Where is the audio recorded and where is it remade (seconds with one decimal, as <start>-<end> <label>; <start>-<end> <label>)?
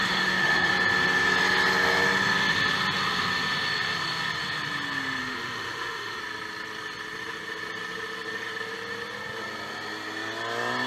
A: 0.0-0.7 remade; 0.7-5.2 recorded; 5.2-6.2 remade; 6.2-10.9 recorded